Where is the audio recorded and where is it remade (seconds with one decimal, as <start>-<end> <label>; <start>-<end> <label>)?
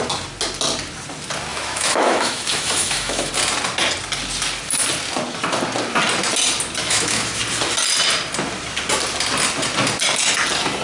0.0-1.5 recorded; 1.5-3.3 remade; 3.3-6.8 recorded; 6.8-7.4 remade; 7.4-10.8 recorded